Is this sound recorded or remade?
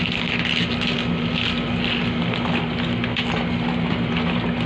recorded